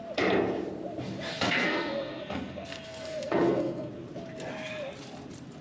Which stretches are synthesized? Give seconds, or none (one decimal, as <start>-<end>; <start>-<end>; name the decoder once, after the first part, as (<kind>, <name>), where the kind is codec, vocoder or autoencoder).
1.3-3.9 (codec, SNAC)